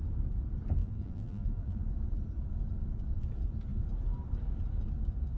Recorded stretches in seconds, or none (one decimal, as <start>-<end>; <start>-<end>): 0.0-0.8; 1.8-5.4

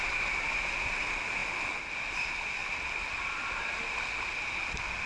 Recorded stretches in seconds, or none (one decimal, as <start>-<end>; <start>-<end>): 0.0-5.1

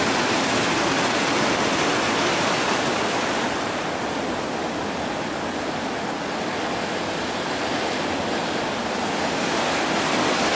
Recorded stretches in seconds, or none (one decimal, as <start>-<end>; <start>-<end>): 0.0-8.4; 9.0-10.5

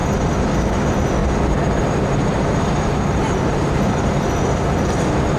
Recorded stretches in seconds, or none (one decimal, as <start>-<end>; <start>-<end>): 0.0-1.2; 4.1-5.4

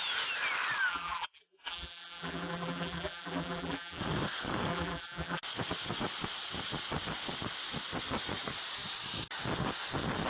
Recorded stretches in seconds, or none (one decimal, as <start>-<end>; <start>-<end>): 0.0-0.9; 4.0-4.7; 5.4-10.3

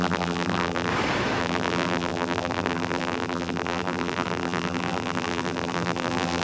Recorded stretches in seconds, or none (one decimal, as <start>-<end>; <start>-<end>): 0.9-1.4

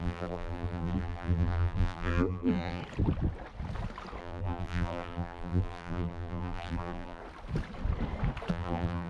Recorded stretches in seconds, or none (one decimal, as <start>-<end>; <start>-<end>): 2.8-4.2; 7.2-8.5